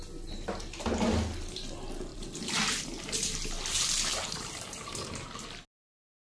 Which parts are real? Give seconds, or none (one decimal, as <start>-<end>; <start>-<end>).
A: 0.0-2.1; 2.6-4.1; 4.9-6.3